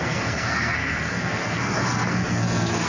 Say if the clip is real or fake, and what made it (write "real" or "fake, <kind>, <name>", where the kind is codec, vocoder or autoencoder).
fake, codec, SNAC